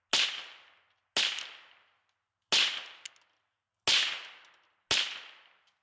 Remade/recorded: recorded